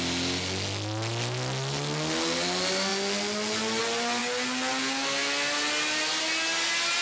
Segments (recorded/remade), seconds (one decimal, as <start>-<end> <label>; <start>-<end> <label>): 0.0-7.0 recorded